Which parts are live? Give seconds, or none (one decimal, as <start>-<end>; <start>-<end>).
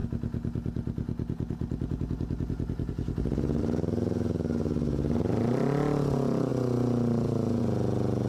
0.0-8.3